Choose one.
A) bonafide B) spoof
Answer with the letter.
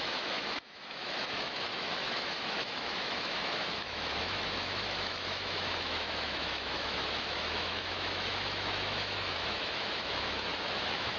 B